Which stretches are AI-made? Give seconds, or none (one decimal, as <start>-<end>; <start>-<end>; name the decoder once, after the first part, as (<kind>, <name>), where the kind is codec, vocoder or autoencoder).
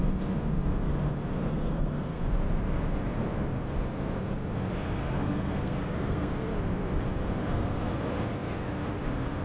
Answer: 1.5-2.2 (codec, SNAC); 5.0-6.3